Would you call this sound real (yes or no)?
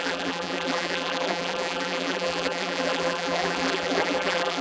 no